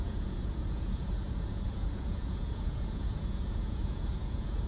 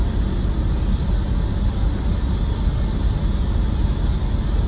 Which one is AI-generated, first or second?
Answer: first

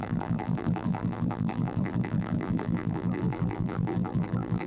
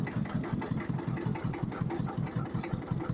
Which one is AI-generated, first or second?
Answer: first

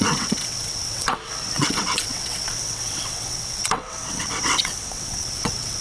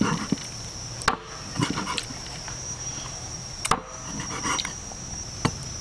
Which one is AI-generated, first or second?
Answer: first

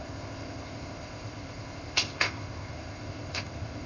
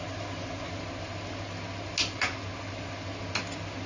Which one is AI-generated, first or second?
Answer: first